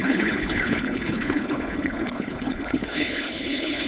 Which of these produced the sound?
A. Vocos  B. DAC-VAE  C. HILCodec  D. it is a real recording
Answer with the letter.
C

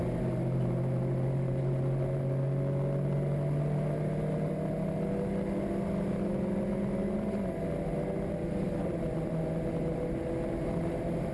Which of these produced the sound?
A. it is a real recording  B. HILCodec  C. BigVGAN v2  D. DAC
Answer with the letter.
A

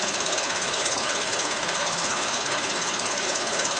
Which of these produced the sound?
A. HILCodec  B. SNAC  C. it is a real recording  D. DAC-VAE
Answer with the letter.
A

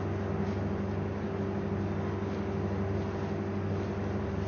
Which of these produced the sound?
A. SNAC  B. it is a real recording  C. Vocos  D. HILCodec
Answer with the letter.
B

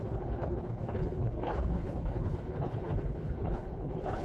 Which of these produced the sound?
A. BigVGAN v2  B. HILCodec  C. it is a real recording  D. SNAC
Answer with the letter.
B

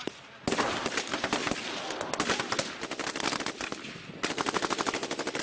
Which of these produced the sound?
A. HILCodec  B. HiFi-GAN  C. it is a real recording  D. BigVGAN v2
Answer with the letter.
C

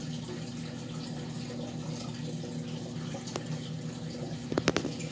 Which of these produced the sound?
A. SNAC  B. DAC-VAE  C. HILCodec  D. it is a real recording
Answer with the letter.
D